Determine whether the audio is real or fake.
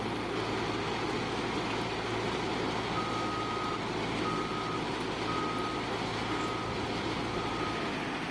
real